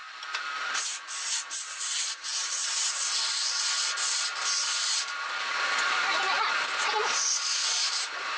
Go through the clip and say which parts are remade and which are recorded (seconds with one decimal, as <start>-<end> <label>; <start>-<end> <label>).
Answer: 0.0-0.5 remade; 0.5-2.3 recorded; 2.3-6.4 remade; 6.4-8.4 recorded